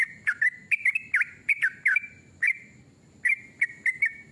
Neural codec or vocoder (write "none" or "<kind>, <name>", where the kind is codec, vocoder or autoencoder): none